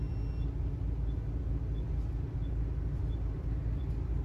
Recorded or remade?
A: recorded